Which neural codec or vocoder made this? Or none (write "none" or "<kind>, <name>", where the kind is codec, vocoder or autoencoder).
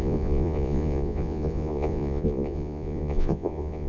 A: vocoder, Vocos